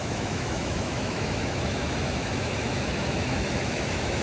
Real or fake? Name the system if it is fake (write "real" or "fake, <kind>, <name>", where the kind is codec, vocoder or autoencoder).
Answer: fake, autoencoder, DAC-VAE